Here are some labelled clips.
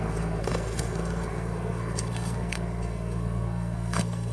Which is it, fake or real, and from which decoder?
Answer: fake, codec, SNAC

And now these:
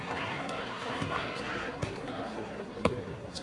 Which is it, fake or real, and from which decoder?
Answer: fake, codec, SNAC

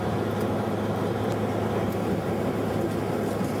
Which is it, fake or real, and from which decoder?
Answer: real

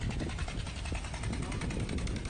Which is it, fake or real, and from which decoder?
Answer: real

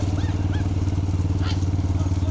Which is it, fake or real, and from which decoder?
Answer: real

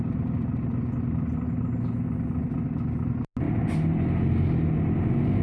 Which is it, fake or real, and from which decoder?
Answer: real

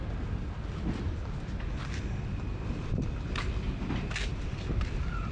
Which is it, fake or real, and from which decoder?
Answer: real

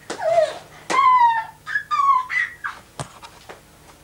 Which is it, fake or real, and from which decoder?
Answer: real